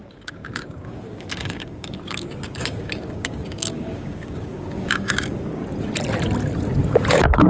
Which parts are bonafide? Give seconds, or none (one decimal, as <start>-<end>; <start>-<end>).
5.6-7.1